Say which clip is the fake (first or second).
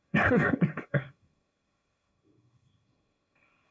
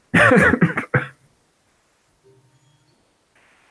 first